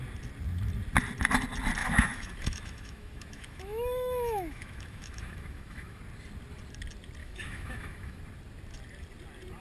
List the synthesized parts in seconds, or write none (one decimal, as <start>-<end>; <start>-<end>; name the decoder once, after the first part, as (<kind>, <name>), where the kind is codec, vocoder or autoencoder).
1.8-6.0 (autoencoder, DAC-VAE); 7.2-8.2